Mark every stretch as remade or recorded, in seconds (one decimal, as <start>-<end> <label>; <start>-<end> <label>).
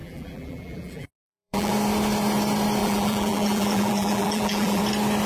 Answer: 0.0-1.7 remade; 1.7-2.8 recorded; 2.8-4.8 remade; 4.8-5.3 recorded